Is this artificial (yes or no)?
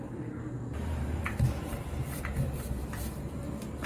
yes